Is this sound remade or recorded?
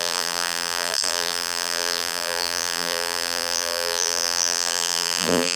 remade